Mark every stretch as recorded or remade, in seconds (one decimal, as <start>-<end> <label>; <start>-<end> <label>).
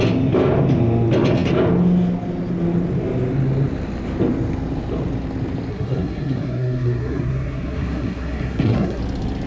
0.0-5.7 recorded; 5.7-9.0 remade; 9.0-9.5 recorded